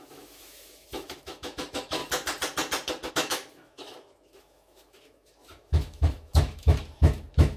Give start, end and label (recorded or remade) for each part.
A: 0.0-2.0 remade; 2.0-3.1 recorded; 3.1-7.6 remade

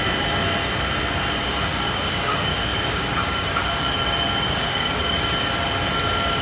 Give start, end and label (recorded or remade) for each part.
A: 0.0-1.7 recorded; 1.7-5.5 remade; 5.5-6.4 recorded

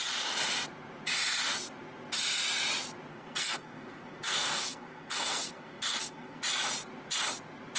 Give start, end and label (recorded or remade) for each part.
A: 0.0-3.1 recorded; 3.1-6.4 remade; 6.4-7.8 recorded

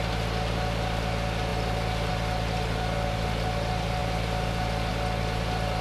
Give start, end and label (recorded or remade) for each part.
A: 0.0-5.8 recorded